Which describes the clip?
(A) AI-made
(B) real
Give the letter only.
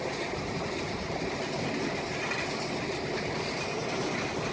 B